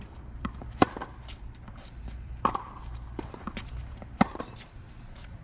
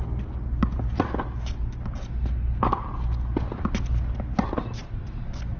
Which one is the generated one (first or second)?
first